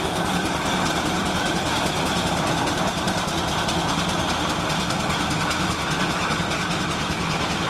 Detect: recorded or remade recorded